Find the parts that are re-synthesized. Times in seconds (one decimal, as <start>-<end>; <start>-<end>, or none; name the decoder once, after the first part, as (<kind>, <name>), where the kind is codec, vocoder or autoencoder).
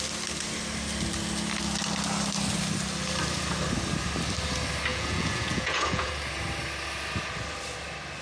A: 4.9-6.1 (vocoder, Vocos)